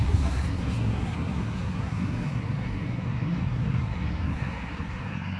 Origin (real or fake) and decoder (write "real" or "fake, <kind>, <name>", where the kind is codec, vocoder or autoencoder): fake, codec, SNAC